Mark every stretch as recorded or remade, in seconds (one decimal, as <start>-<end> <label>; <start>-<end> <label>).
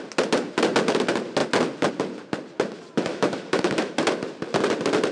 0.0-3.1 recorded; 3.1-3.9 remade; 3.9-5.1 recorded